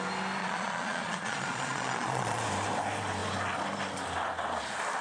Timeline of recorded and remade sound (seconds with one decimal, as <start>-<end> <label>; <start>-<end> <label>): 0.0-0.4 recorded; 0.4-2.4 remade; 2.4-5.0 recorded